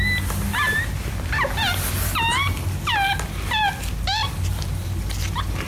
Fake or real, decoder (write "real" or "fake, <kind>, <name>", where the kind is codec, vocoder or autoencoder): real